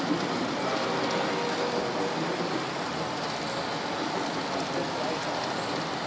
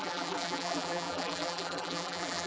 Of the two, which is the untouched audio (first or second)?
first